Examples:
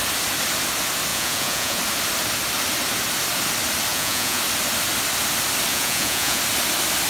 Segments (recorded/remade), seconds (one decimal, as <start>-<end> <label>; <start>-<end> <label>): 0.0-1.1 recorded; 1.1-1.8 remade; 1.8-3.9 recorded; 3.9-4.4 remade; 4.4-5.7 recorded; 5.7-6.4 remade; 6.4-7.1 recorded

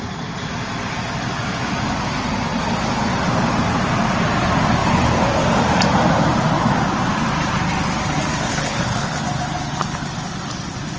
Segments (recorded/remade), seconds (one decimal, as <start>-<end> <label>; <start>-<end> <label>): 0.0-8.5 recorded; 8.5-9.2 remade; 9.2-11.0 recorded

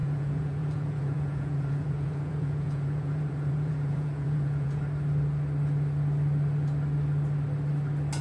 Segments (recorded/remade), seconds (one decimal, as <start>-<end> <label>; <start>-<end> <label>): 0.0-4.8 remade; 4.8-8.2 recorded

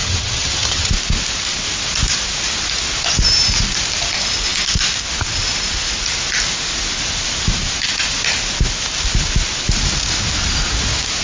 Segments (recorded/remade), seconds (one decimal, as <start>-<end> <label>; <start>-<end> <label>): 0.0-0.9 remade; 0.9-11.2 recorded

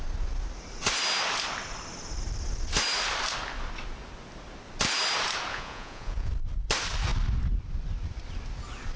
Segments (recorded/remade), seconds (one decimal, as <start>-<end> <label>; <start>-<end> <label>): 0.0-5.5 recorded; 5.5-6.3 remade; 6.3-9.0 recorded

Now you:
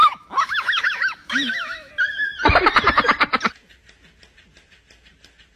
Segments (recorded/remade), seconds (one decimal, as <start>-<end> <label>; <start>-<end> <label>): 0.0-1.9 remade; 1.9-5.6 recorded

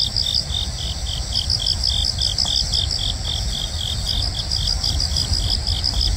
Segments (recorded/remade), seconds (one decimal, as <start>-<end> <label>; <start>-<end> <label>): 0.0-6.2 recorded